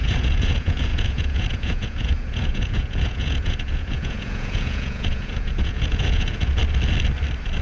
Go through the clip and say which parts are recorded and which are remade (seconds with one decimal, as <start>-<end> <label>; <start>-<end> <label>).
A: 0.0-6.6 remade; 6.6-7.6 recorded